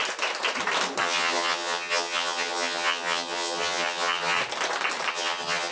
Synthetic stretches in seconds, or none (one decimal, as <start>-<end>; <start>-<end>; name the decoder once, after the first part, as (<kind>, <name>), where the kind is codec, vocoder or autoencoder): 1.0-4.4 (vocoder, HiFi-GAN); 5.1-5.7